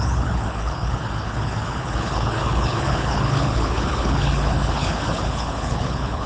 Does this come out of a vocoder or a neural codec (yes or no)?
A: yes